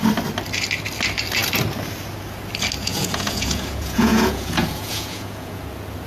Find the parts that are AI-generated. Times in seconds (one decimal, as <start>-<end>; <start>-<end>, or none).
2.8-5.6